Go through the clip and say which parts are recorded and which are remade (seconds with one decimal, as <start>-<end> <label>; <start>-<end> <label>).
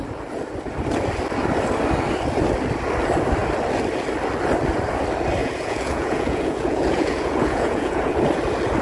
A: 0.0-5.4 recorded; 5.4-8.1 remade; 8.1-8.8 recorded